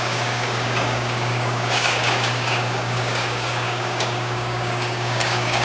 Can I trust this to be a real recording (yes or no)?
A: no